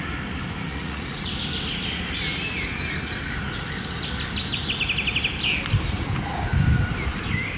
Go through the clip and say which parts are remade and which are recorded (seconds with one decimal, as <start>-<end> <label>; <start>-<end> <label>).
0.0-0.7 recorded; 0.7-1.3 remade; 1.3-7.6 recorded